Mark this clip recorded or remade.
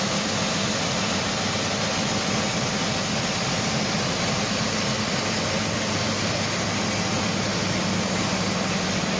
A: recorded